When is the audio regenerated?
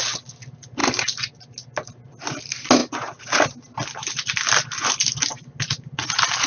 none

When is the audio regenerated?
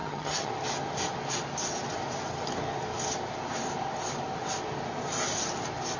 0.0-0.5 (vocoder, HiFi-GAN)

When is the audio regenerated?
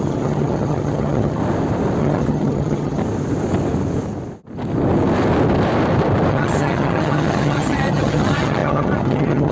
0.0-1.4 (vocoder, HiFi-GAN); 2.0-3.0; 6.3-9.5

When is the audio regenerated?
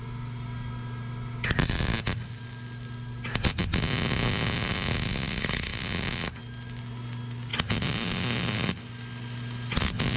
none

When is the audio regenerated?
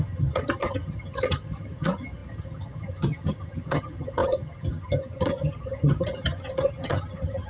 0.0-7.5 (vocoder, HiFi-GAN)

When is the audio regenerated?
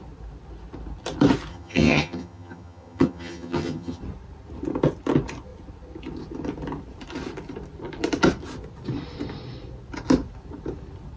1.5-4.0 (vocoder, HiFi-GAN)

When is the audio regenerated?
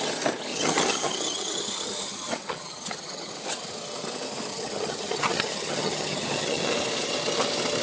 0.5-3.3 (vocoder, HiFi-GAN); 4.5-6.7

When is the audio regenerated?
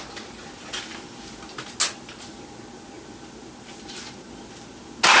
none